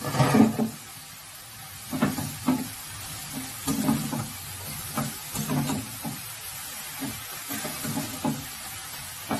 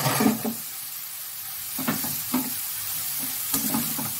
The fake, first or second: second